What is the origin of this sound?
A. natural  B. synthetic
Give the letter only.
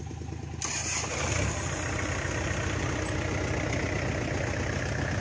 A